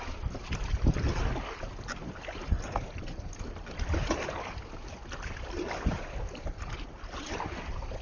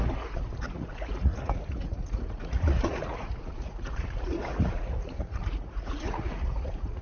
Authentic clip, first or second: first